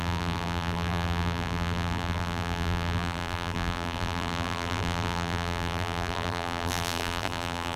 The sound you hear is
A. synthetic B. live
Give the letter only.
A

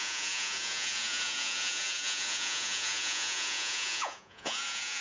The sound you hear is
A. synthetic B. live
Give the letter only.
A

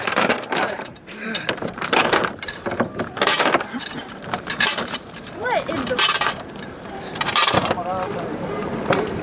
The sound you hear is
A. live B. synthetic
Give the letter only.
B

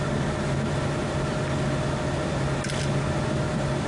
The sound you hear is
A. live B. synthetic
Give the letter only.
A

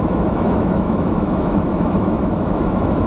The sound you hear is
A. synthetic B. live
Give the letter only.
A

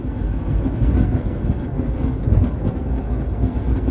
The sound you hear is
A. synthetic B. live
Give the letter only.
A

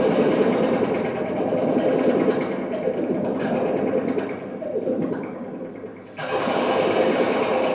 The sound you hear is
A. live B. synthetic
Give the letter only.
A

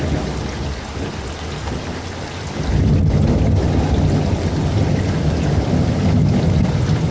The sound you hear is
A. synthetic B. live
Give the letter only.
B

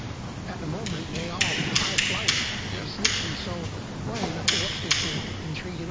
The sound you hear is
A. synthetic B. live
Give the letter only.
B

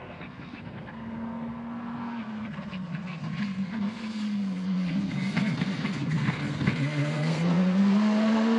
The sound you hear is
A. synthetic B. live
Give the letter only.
A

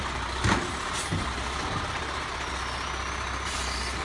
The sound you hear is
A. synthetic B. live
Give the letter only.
B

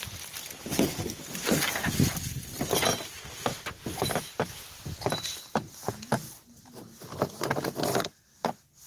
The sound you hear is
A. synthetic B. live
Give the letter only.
B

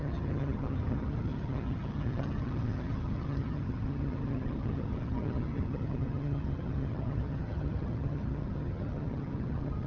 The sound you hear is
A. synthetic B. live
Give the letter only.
A